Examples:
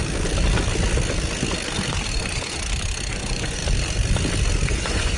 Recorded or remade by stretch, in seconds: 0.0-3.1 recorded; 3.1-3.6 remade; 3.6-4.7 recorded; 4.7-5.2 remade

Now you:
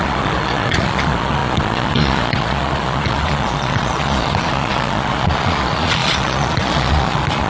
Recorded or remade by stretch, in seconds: 0.0-7.5 remade